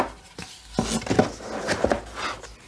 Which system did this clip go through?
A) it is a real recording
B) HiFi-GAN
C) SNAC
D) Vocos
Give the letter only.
A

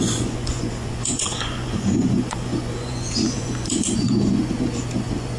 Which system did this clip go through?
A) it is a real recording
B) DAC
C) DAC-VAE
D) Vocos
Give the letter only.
D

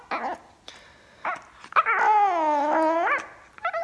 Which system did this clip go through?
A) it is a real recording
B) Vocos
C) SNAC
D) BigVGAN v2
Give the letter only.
A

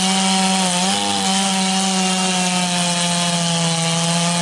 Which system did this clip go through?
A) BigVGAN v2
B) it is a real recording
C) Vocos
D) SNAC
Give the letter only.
B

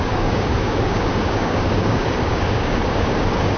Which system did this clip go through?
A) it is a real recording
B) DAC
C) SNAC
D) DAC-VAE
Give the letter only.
B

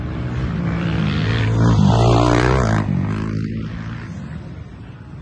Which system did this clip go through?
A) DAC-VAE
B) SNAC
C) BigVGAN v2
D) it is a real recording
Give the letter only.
D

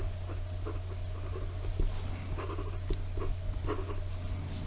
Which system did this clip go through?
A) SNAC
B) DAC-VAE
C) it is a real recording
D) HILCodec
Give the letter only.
C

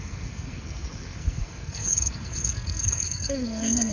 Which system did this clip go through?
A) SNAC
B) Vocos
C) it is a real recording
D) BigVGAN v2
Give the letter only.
A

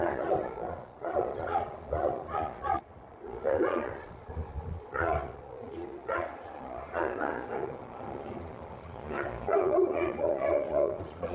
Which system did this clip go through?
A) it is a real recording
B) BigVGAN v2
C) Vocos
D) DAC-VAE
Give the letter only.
C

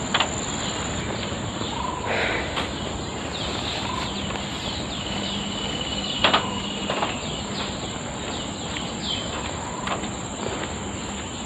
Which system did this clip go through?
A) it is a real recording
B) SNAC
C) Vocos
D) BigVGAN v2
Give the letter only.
A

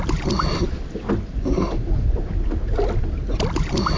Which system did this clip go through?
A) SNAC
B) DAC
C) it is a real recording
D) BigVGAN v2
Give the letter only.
C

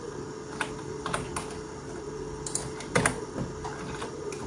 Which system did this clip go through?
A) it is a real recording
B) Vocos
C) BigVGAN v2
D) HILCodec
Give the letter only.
A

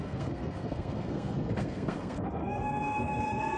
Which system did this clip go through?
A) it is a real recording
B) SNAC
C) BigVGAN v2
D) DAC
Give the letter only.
B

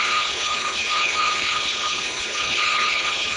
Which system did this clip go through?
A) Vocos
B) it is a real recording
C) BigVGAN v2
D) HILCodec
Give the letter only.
D